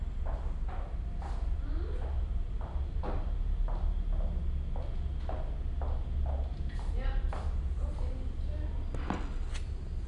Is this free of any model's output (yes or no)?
yes